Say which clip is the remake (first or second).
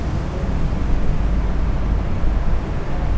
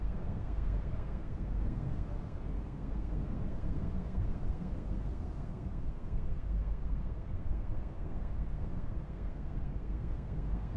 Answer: second